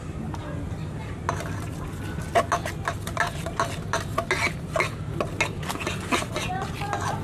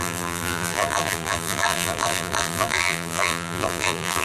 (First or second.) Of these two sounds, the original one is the first